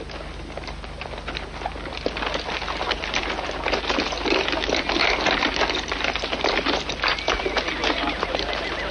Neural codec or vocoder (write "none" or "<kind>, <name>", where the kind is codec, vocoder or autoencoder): none